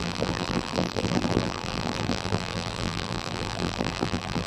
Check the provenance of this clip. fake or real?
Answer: fake